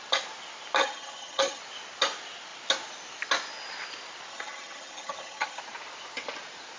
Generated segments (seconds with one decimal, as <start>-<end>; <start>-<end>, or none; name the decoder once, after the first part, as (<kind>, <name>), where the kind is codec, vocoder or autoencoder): 0.8-1.6 (vocoder, HiFi-GAN); 4.3-5.6